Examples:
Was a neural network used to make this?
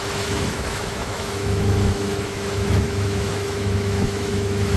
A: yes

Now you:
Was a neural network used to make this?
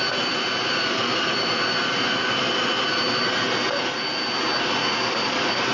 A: no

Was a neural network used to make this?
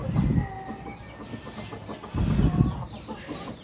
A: no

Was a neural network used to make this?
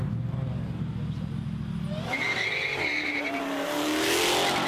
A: no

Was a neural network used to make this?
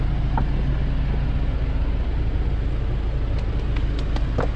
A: no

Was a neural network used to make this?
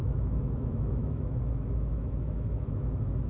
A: yes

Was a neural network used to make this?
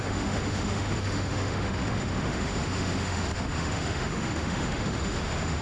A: yes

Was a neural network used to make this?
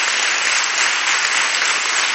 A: no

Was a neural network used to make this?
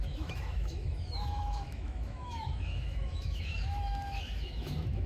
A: yes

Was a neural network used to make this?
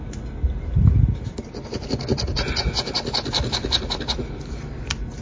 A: no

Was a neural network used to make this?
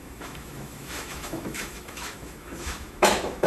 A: yes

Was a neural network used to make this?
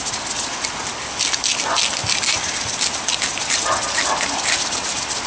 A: no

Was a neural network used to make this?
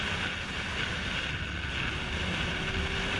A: no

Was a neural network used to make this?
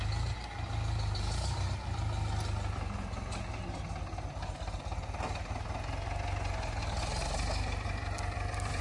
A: no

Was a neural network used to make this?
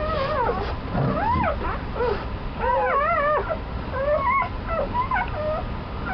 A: no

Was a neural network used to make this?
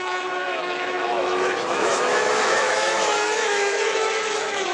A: yes